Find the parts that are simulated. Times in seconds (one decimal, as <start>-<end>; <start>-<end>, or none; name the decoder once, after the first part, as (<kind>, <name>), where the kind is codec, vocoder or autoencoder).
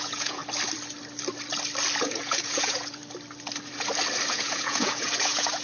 0.0-0.4 (vocoder, Vocos); 2.0-3.0; 4.3-5.6